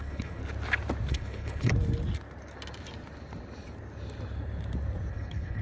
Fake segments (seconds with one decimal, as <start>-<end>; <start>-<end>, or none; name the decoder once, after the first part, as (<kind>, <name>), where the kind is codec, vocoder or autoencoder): 0.0-0.4 (codec, HILCodec); 1.1-1.7; 5.1-5.6